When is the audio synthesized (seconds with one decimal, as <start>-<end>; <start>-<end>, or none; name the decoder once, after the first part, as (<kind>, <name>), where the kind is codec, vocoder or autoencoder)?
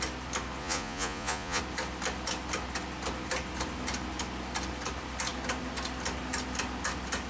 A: 0.6-1.6 (vocoder, Vocos)